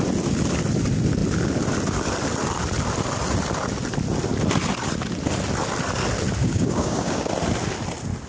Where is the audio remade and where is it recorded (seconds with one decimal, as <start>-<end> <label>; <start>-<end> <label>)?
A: 0.0-6.4 recorded; 6.4-7.3 remade; 7.3-8.3 recorded